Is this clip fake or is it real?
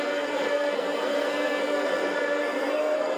fake